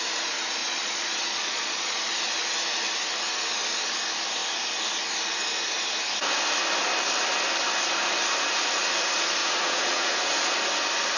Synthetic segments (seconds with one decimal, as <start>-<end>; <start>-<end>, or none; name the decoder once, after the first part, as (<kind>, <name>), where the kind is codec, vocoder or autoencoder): 0.6-2.0 (vocoder, Vocos); 9.4-10.3